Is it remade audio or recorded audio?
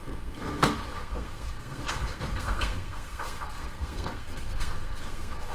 remade